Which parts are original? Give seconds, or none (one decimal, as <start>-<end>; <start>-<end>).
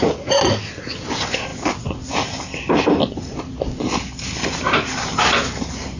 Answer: 0.0-6.0